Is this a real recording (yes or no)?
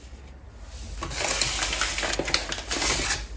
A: yes